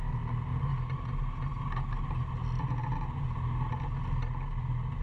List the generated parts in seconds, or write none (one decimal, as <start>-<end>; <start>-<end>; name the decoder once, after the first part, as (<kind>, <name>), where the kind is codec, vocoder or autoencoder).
none